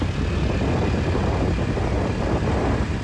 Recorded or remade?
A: recorded